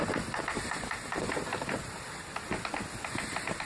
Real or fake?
real